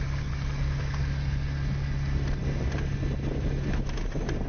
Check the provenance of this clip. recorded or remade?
recorded